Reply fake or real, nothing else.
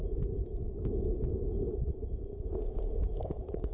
real